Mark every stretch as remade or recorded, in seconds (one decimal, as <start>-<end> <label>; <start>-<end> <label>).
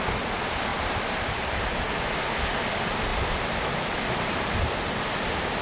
0.0-0.7 recorded; 0.7-1.5 remade; 1.5-5.6 recorded